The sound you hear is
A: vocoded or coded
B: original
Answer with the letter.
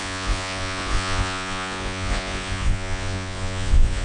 A